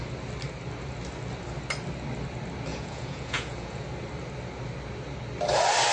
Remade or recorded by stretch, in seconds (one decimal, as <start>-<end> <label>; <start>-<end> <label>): 0.0-2.7 recorded; 2.7-3.8 remade; 3.8-5.9 recorded